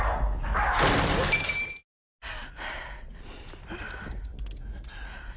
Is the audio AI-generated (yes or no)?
no